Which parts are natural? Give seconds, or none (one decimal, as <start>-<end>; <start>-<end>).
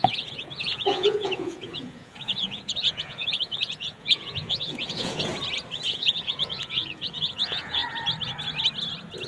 5.3-5.9; 7.8-9.3